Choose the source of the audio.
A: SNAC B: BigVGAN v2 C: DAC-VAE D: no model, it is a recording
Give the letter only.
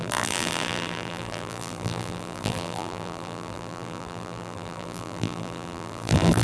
B